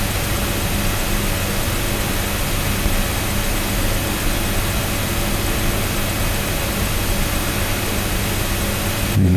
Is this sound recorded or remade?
recorded